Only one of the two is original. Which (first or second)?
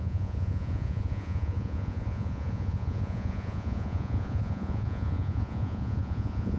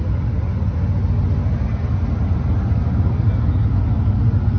second